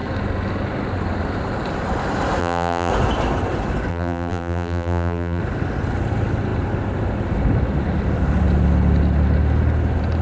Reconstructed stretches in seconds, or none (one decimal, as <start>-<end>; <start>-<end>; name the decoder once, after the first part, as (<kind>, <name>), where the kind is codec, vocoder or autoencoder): 2.4-2.9 (vocoder, BigVGAN v2); 3.9-5.4